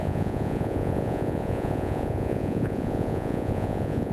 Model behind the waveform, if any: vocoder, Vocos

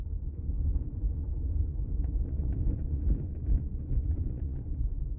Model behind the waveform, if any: vocoder, Vocos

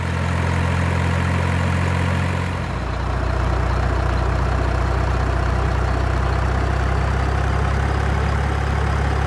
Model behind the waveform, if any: none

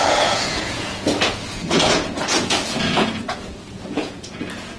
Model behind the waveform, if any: vocoder, Vocos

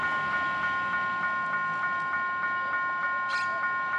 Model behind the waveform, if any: none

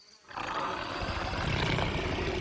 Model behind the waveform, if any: none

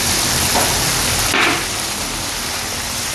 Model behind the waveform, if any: none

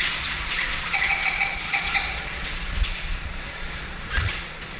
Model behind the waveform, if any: vocoder, Vocos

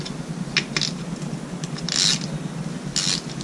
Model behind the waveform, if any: none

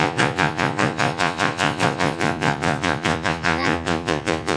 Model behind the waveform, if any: vocoder, Vocos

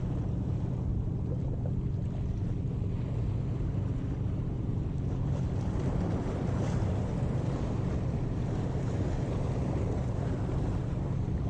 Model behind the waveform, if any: none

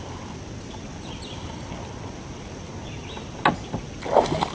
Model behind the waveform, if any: none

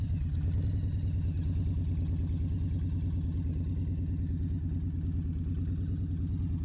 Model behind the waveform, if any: none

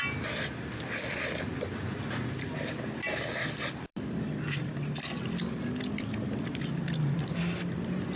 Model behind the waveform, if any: none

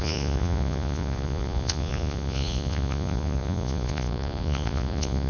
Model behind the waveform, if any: vocoder, Vocos